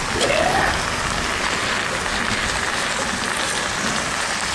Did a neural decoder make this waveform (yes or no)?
no